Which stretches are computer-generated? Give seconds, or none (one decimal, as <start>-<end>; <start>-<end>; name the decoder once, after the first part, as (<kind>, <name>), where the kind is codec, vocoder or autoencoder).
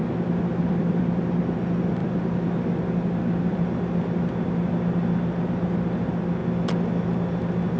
none